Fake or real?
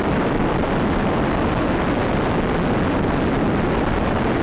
real